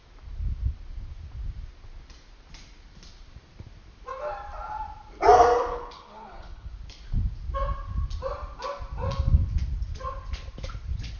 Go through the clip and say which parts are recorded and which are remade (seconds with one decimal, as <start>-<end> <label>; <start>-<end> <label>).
0.0-5.7 recorded; 5.7-6.7 remade; 6.7-11.2 recorded